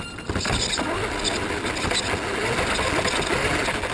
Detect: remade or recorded recorded